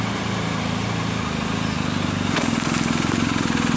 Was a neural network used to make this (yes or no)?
no